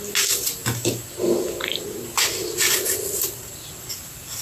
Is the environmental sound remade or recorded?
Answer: recorded